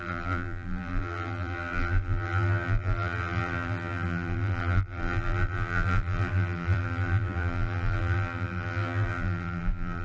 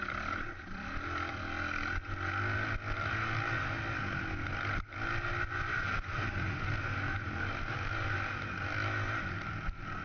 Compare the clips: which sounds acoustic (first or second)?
second